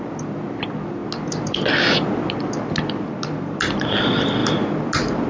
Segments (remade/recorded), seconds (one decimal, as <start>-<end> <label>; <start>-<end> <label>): 0.0-5.3 recorded